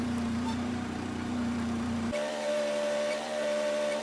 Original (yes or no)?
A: no